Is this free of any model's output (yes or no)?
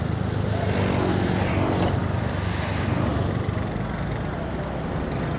yes